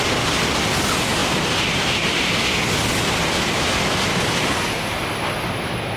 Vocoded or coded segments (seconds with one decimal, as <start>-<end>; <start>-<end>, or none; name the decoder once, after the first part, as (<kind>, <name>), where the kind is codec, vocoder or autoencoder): 1.2-2.4 (vocoder, BigVGAN v2)